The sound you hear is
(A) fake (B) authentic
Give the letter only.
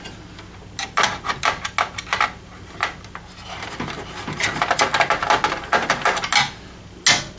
B